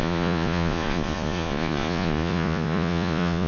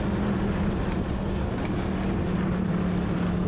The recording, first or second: second